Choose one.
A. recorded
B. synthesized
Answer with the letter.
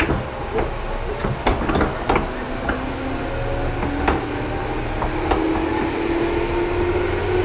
A